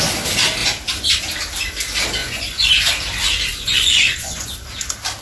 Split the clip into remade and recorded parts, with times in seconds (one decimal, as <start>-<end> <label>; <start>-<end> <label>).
0.0-2.2 recorded; 2.2-2.7 remade; 2.7-3.5 recorded; 3.5-4.5 remade; 4.5-5.2 recorded